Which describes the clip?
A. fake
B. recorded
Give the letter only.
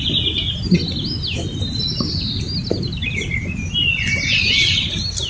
B